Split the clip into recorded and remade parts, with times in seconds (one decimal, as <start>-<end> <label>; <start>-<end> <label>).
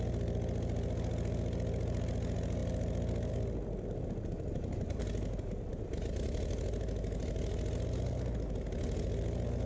0.0-9.7 recorded